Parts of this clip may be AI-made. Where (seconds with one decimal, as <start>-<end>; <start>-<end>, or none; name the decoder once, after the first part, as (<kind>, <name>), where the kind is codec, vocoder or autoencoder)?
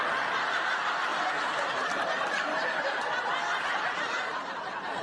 none